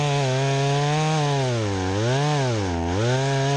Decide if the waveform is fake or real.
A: real